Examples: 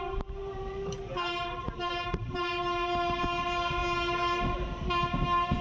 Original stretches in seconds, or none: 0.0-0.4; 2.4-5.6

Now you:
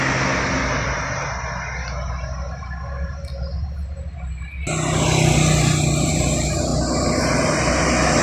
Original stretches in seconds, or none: 0.0-8.2

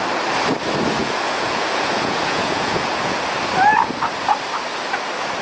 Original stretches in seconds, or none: 0.0-1.0; 3.2-5.4

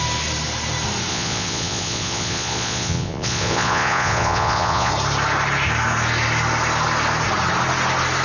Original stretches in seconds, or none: 0.0-1.1; 4.9-8.2

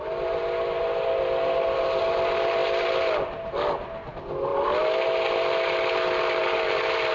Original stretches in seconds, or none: 0.0-7.1

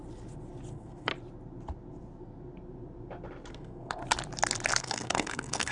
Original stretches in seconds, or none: 0.0-0.7; 1.1-3.5; 4.0-4.8

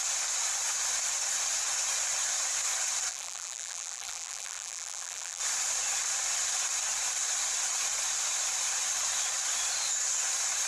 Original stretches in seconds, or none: 0.0-3.1; 5.4-10.7

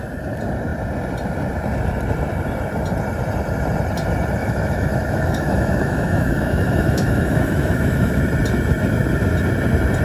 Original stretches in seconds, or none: 0.0-4.4; 8.2-10.0